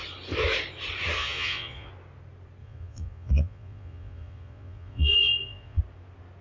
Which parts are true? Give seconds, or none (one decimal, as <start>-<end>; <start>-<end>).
0.0-1.2; 1.9-2.6; 5.8-6.4